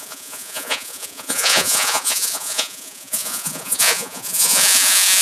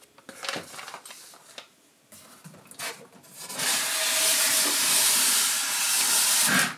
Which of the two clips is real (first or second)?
second